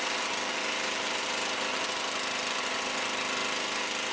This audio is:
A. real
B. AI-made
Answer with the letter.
A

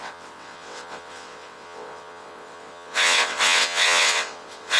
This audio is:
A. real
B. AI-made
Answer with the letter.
B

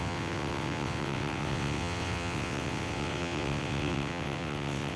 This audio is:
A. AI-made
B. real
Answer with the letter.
A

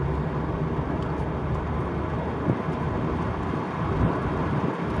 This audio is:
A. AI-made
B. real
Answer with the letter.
B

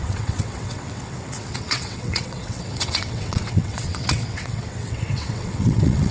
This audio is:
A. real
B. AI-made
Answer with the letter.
B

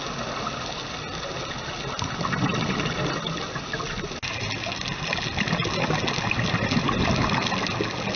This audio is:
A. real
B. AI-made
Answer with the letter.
A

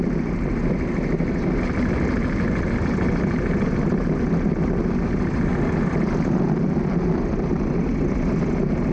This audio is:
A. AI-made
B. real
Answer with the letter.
B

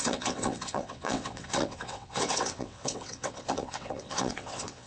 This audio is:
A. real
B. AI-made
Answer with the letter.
B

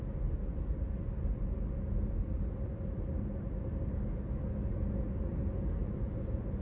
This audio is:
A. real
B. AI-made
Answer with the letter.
A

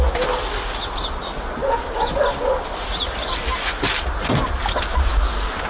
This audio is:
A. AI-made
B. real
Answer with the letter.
B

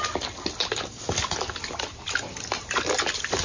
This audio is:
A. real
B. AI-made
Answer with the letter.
A